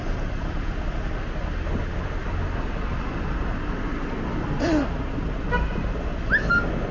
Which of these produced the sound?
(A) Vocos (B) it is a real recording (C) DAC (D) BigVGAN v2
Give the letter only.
B